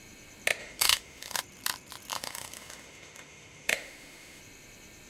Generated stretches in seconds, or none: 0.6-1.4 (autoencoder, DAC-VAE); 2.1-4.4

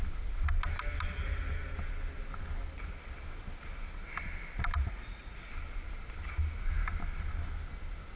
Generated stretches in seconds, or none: 4.8-5.5 (vocoder, Vocos)

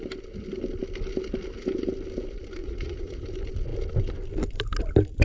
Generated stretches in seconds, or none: 2.6-3.2 (vocoder, Vocos)

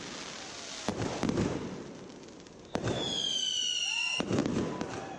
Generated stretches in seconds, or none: none

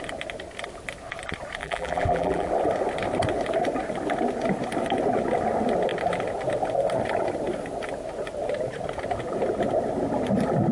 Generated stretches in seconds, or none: 1.6-2.5 (vocoder, BigVGAN v2)

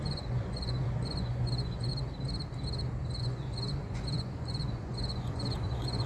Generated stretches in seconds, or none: 0.0-1.9 (vocoder, Vocos); 3.2-6.1

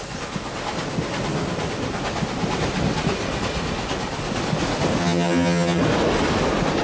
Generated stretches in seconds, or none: 5.0-5.8 (vocoder, HiFi-GAN)

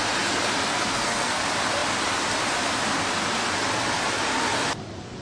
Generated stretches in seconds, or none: 0.7-1.4 (codec, SNAC)